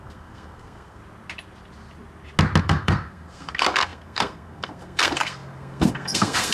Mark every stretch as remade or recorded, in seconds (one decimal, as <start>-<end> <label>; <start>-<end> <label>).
0.0-1.0 remade; 1.0-2.6 recorded; 2.6-6.5 remade